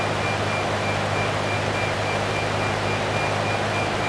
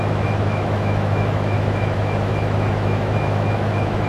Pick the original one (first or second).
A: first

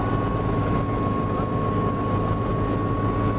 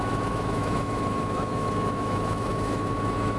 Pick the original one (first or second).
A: first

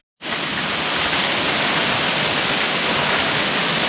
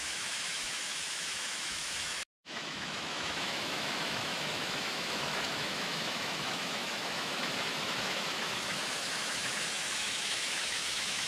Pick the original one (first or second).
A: first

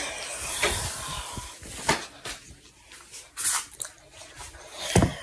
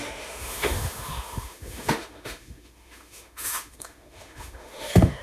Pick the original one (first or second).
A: first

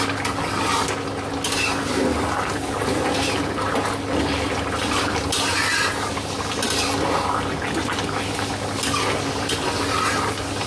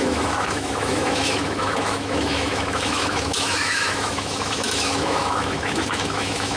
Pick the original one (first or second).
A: first